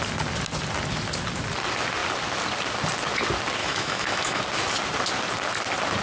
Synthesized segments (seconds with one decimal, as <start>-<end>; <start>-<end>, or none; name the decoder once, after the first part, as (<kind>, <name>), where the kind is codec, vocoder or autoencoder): 3.6-4.4 (autoencoder, DAC-VAE)